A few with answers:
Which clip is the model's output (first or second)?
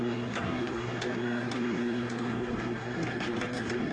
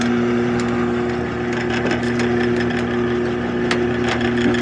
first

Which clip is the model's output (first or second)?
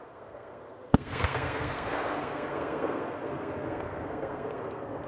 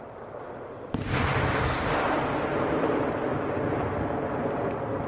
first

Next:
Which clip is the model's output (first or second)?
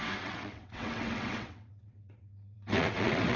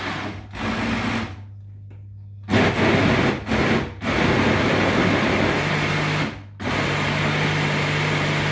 first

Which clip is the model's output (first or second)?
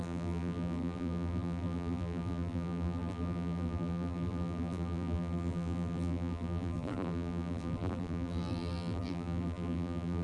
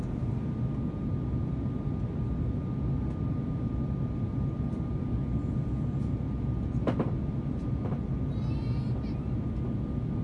first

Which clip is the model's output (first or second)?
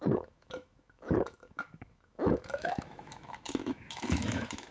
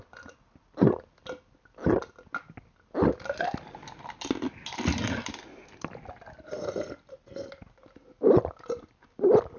first